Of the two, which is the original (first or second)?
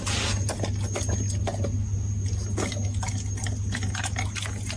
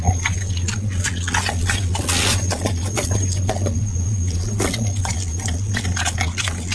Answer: first